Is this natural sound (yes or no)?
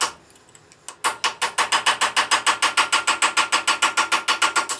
yes